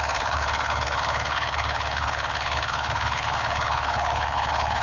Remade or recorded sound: remade